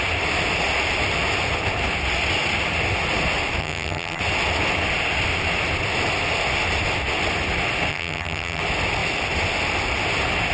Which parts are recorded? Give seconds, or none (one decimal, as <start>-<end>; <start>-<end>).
0.0-3.6; 4.2-7.9; 8.6-10.5